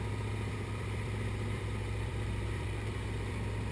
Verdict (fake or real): fake